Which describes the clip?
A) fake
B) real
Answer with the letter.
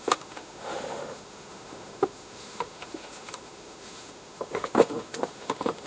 A